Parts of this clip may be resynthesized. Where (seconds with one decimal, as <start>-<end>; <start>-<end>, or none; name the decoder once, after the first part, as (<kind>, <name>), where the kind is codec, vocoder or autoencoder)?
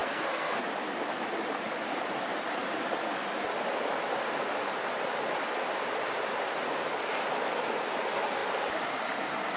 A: 0.0-0.6 (codec, SNAC)